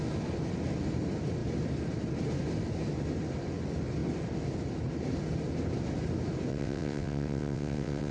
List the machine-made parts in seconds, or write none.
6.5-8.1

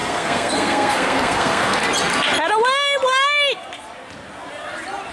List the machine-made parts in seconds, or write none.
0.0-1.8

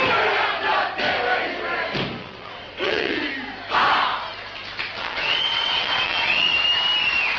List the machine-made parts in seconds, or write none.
2.2-3.3; 5.0-6.5

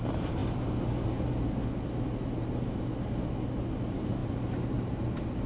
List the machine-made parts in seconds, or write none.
none

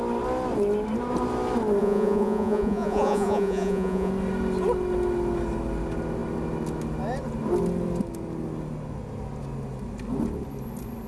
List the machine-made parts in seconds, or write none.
1.8-4.1